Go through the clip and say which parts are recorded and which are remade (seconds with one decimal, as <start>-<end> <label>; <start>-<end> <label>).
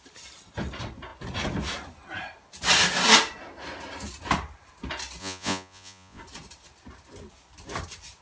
0.0-5.2 recorded; 5.2-6.2 remade; 6.2-8.2 recorded